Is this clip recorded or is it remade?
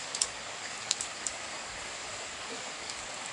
remade